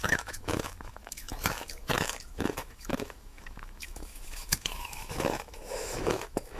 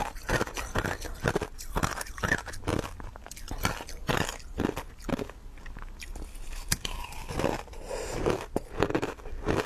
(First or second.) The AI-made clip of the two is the first